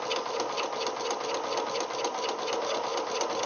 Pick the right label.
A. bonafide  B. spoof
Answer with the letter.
A